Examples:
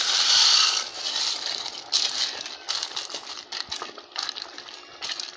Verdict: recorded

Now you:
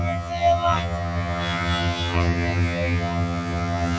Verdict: remade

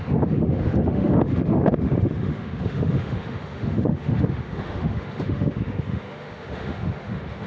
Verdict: remade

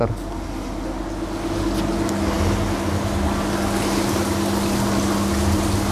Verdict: recorded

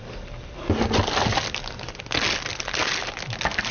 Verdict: recorded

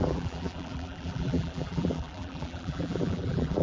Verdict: remade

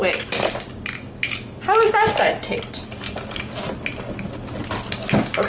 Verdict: recorded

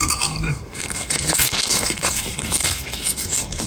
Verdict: remade